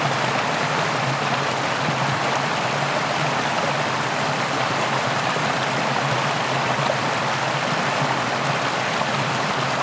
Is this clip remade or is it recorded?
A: recorded